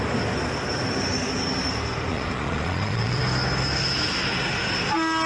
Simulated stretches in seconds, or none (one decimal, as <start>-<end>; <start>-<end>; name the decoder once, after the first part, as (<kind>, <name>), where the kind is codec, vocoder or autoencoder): 2.1-3.2 (vocoder, Vocos)